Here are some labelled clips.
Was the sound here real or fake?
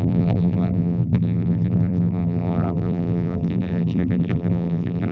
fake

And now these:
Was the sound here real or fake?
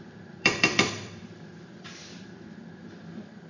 fake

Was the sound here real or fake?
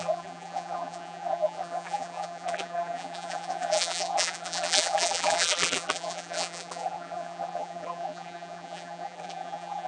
fake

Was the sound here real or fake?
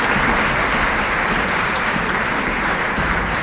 real